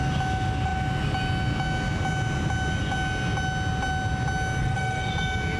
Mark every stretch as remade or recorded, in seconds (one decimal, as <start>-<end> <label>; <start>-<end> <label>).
0.0-4.6 recorded; 4.6-5.1 remade; 5.1-5.6 recorded

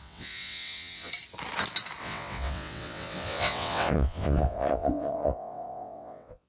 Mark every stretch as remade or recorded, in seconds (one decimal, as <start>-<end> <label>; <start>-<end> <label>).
0.0-1.1 remade; 1.1-2.0 recorded; 2.0-6.5 remade

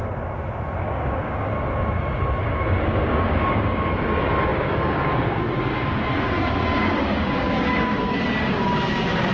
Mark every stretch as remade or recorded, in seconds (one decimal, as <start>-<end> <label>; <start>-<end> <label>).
0.0-0.8 recorded; 0.8-1.5 remade; 1.5-2.4 recorded; 2.4-3.9 remade; 3.9-4.5 recorded; 4.5-9.3 remade

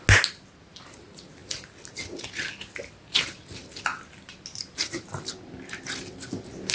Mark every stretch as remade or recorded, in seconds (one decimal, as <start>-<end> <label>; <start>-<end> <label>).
0.0-6.7 recorded

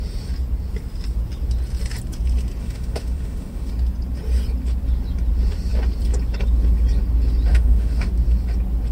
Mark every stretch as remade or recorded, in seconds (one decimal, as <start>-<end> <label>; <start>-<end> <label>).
0.0-2.6 recorded; 2.6-3.7 remade; 3.7-7.5 recorded; 7.5-8.1 remade; 8.1-8.9 recorded

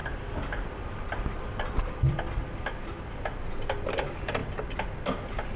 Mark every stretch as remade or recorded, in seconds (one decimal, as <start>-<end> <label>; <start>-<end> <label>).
0.0-3.4 remade; 3.4-5.6 recorded

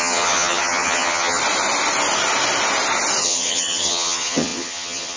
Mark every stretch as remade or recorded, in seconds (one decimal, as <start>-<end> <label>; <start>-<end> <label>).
0.0-1.4 remade; 1.4-3.2 recorded; 3.2-5.2 remade

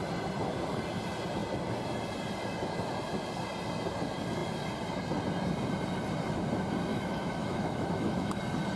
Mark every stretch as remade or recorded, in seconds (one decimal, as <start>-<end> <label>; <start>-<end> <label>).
0.0-6.9 recorded; 6.9-8.4 remade; 8.4-8.8 recorded